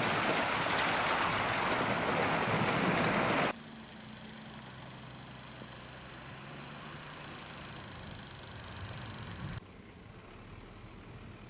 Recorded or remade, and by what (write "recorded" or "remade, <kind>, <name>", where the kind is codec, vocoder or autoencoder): recorded